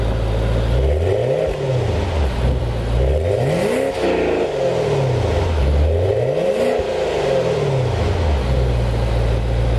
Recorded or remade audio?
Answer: recorded